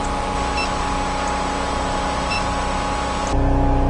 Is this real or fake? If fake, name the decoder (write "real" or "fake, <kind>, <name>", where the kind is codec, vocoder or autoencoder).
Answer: real